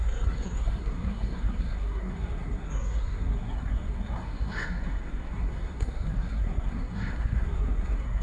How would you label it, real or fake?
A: fake